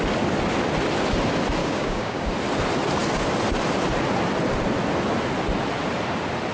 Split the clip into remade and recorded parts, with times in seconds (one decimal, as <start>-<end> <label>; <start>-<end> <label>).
0.0-1.6 recorded; 1.6-2.3 remade; 2.3-6.5 recorded